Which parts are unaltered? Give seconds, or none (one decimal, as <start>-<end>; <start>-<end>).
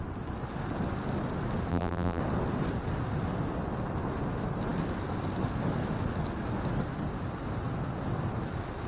0.0-1.7; 2.2-8.9